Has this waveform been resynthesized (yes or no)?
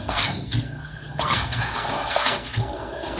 yes